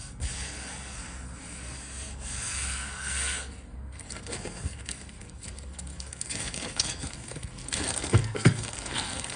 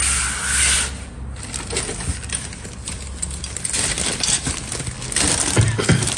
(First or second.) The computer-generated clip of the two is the first